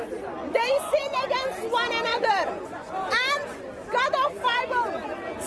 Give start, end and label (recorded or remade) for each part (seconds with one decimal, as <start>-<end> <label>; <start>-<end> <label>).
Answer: 0.0-0.4 recorded; 0.4-1.0 remade; 1.0-2.1 recorded; 2.1-2.9 remade; 2.9-5.5 recorded